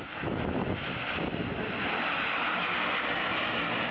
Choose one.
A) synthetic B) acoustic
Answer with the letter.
B